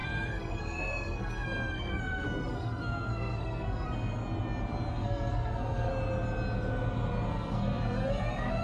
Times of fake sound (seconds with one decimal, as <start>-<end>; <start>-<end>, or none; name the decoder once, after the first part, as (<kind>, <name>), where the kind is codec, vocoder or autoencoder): 0.0-4.2 (codec, SNAC); 4.9-5.9; 7.3-8.6